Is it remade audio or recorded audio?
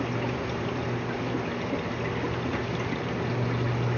recorded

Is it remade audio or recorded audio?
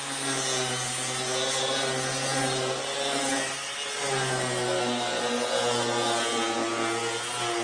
recorded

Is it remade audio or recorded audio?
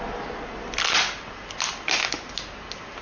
recorded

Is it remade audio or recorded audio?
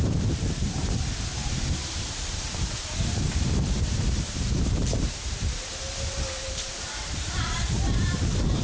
remade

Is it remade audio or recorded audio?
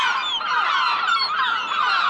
recorded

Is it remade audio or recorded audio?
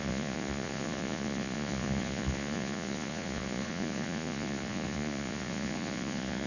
remade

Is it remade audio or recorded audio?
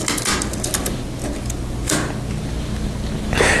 recorded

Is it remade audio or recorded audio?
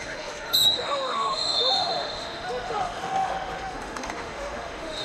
remade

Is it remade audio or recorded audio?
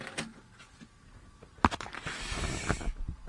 recorded